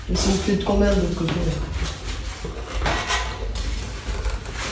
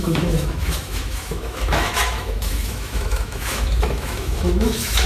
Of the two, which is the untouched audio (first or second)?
first